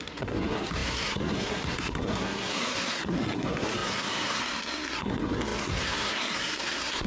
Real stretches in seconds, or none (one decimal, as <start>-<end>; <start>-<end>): none